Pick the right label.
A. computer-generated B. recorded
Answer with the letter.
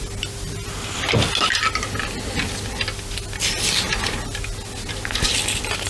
B